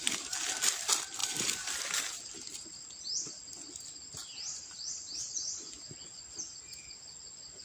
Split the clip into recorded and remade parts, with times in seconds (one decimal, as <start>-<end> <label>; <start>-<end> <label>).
0.0-7.6 recorded